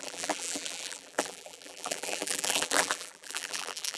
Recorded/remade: remade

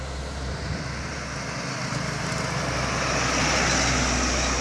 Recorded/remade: recorded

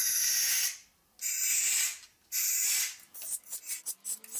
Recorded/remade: recorded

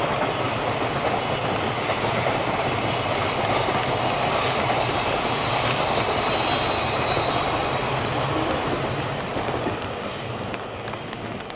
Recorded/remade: recorded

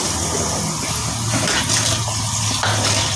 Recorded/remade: recorded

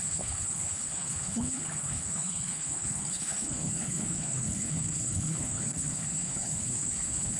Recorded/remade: remade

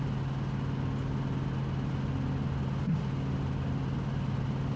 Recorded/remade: recorded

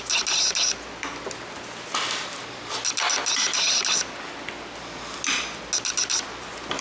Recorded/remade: recorded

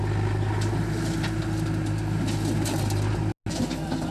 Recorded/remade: recorded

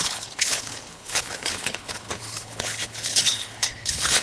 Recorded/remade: remade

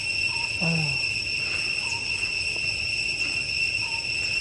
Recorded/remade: recorded